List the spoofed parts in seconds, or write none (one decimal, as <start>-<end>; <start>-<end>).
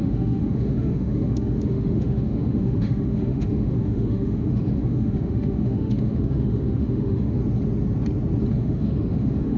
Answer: 0.0-7.4; 8.5-9.6